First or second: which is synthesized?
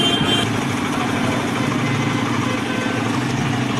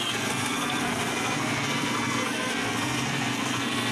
second